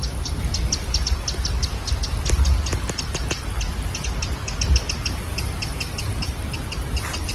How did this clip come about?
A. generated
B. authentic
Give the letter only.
B